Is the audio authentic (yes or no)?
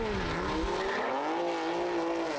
yes